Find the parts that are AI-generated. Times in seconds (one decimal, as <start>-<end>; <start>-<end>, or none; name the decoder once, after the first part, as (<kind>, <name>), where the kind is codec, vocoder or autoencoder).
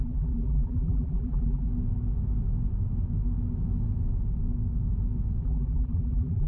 0.0-1.7 (vocoder, BigVGAN v2); 5.4-6.5